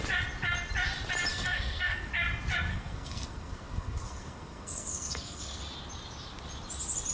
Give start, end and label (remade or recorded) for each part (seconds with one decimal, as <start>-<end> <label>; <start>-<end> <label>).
0.0-1.3 recorded; 1.3-2.1 remade; 2.1-2.7 recorded; 2.7-5.6 remade; 5.6-7.1 recorded